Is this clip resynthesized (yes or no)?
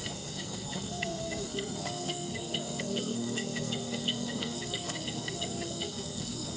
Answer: yes